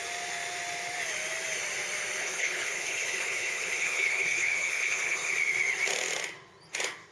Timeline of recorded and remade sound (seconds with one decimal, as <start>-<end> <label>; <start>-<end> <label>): 0.0-2.2 recorded; 2.2-5.3 remade; 5.3-7.1 recorded